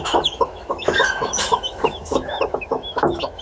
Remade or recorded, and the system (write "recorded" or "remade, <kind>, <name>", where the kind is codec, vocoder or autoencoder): remade, autoencoder, DAC-VAE